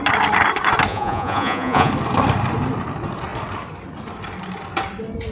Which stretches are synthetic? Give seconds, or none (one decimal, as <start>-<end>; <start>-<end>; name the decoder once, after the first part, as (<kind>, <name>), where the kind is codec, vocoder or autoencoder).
0.9-1.9 (vocoder, Vocos)